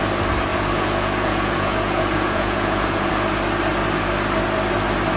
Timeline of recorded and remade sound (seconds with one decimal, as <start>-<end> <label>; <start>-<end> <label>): 0.0-0.5 recorded; 0.5-3.1 remade; 3.1-5.2 recorded